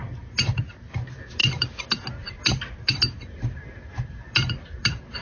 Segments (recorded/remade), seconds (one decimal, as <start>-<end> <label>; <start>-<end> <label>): 0.0-5.2 recorded